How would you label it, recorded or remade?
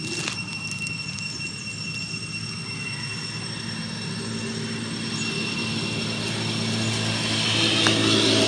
recorded